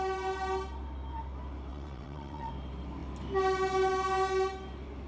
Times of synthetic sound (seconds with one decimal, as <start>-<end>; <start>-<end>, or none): 1.7-2.5